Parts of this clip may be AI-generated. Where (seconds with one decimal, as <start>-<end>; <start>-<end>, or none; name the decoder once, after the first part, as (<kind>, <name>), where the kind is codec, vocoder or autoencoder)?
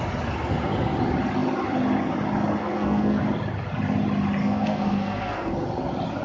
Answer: 2.6-3.2 (codec, SNAC); 4.4-5.5